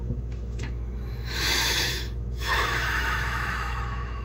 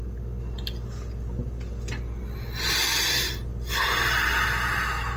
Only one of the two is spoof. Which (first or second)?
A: first